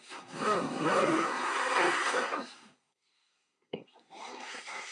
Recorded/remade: remade